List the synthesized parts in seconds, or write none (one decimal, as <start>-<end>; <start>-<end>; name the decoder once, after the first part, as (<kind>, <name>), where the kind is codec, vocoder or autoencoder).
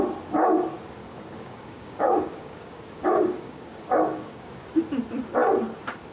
1.0-4.7 (codec, DAC)